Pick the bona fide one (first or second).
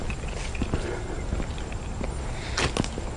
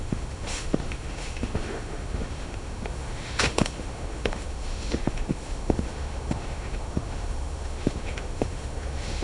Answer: first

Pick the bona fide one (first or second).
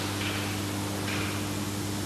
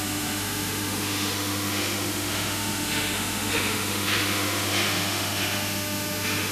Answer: first